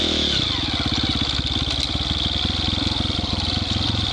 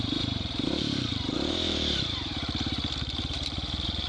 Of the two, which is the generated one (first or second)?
second